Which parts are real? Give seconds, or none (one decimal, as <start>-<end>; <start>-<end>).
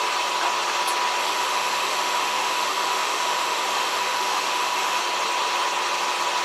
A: 0.0-1.2; 5.0-6.4